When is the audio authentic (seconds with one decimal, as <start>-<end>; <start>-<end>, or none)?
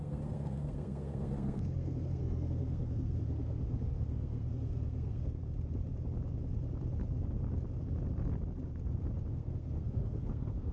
5.4-9.3